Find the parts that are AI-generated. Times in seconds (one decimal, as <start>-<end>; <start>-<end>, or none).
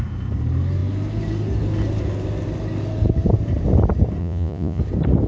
4.2-4.8